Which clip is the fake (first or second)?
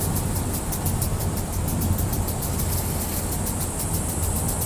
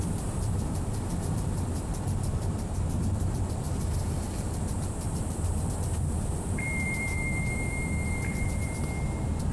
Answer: second